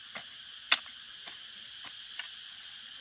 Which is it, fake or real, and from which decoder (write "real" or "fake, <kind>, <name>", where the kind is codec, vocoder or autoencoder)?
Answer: real